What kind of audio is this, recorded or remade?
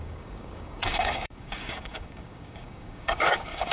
remade